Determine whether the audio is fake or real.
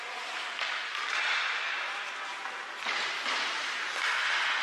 real